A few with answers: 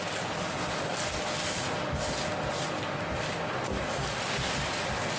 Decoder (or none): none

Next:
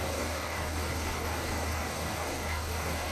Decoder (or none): codec, DAC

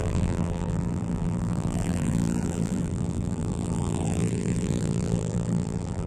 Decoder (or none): vocoder, BigVGAN v2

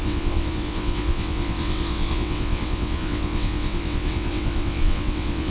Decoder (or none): vocoder, WaveNeXt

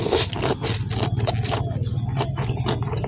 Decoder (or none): none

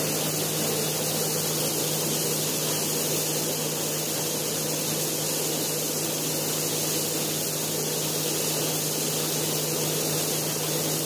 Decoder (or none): none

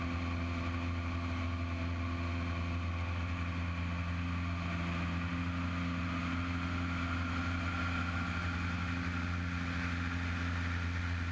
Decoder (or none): none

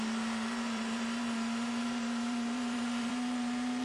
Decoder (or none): vocoder, BigVGAN v2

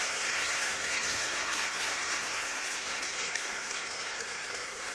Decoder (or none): codec, SNAC